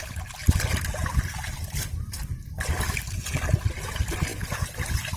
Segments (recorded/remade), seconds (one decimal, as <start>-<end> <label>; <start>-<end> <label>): 0.0-0.4 recorded; 0.4-1.9 remade; 1.9-4.3 recorded; 4.3-5.2 remade